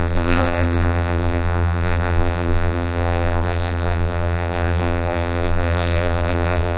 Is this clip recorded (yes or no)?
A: no